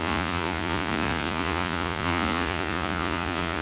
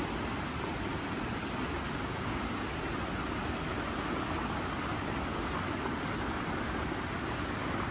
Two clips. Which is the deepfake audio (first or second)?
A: first